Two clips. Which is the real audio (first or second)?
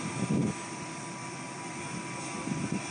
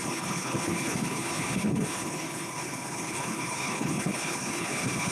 first